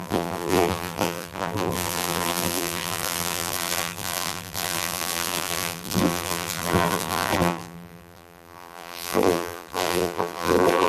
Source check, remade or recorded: remade